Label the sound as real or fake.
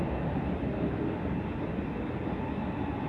real